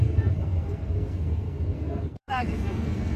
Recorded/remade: remade